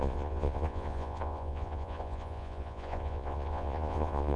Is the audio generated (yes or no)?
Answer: yes